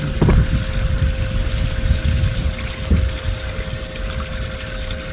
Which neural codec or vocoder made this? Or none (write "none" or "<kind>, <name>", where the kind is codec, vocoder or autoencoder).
none